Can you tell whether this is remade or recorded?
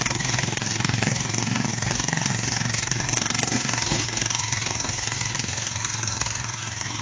remade